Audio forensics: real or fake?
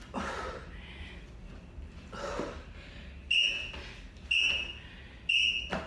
real